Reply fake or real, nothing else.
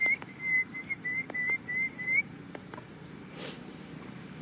fake